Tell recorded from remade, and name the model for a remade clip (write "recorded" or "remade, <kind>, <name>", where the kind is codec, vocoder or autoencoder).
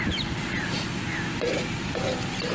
remade, vocoder, BigVGAN v2